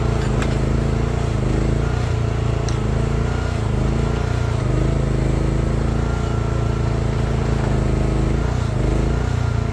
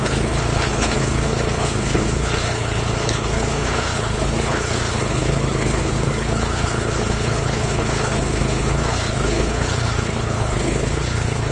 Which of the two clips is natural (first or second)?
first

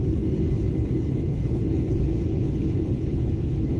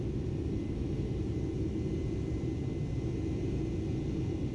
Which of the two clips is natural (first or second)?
second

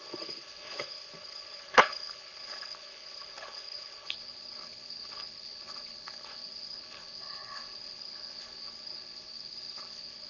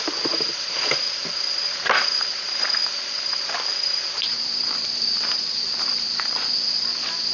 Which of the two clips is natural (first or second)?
second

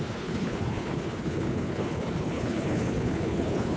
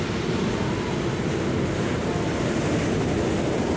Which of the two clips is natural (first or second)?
second